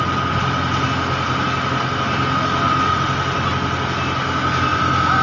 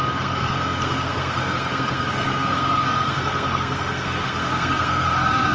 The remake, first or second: second